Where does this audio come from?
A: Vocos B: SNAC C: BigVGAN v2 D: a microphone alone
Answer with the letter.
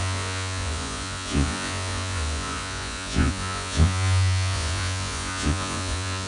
A